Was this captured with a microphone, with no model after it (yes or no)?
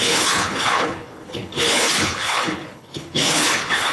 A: no